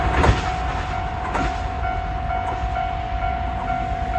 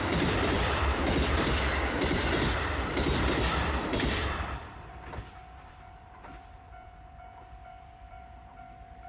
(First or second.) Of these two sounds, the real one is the first